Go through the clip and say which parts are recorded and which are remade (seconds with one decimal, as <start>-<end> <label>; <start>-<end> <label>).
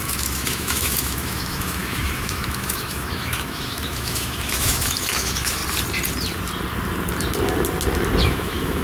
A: 0.0-5.6 remade; 5.6-8.2 recorded; 8.2-8.8 remade